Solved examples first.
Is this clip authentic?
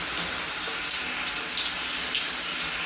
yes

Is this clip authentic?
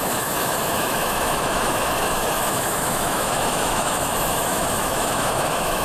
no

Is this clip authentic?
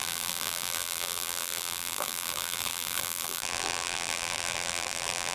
no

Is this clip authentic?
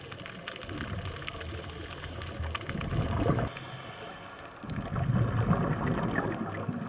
yes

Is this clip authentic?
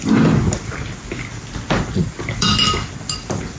yes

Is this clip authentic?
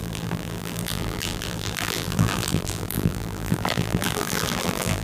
no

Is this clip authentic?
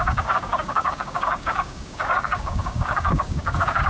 no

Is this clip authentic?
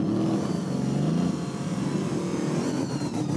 yes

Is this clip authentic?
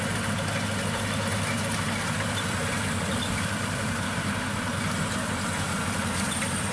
yes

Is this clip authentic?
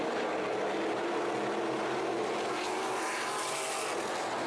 yes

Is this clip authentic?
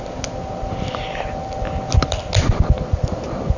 yes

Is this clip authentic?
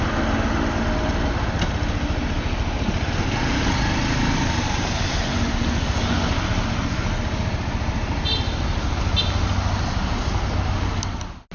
yes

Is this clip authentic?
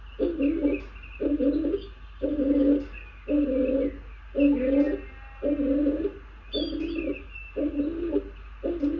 yes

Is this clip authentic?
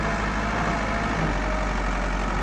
yes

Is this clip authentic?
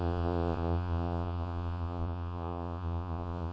no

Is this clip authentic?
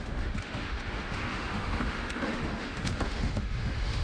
no